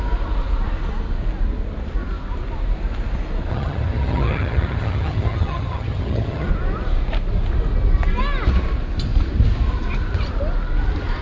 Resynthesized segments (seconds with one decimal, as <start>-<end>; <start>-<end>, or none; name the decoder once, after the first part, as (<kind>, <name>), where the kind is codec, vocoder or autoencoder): 3.5-6.5 (vocoder, HiFi-GAN)